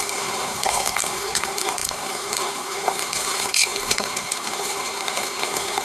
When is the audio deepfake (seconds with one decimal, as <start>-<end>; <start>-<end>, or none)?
0.0-5.8